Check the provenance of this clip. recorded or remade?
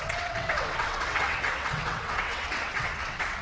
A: remade